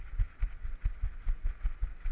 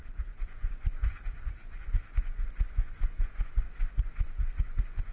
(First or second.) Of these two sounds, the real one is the first